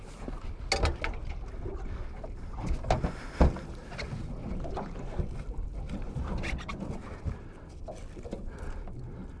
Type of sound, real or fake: real